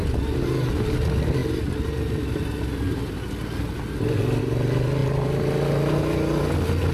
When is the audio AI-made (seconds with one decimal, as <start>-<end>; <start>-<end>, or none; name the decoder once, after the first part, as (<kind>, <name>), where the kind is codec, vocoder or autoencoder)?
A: none